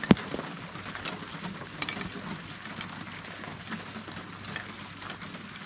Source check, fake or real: real